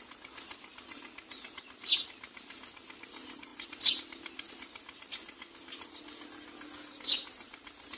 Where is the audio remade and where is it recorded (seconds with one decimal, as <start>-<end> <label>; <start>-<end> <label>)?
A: 0.0-3.5 recorded; 3.5-4.5 remade; 4.5-8.0 recorded